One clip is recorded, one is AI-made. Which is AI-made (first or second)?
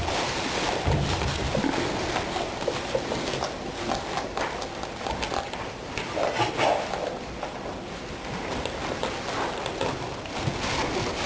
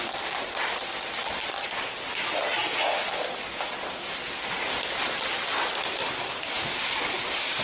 first